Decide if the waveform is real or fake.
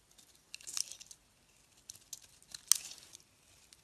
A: real